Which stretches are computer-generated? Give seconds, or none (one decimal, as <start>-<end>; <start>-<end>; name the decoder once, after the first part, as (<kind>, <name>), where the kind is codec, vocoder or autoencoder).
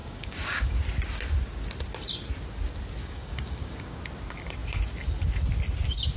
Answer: 0.0-0.8 (codec, DAC); 3.0-4.0